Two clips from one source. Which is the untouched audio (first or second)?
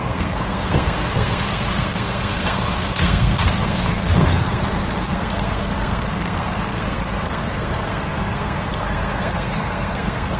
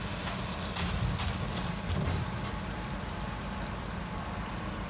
second